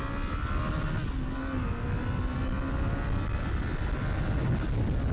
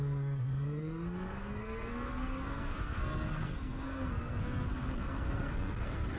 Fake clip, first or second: second